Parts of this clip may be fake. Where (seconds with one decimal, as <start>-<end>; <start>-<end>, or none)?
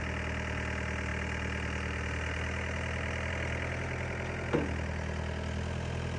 none